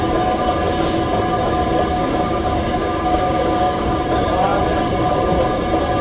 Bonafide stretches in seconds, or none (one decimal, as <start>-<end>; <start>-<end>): 0.0-1.9; 4.0-6.0